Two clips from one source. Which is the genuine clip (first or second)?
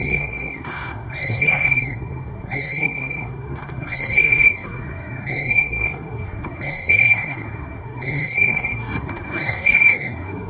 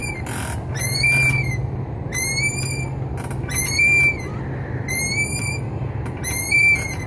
second